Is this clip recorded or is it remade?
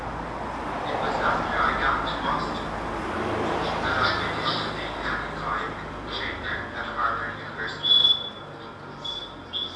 recorded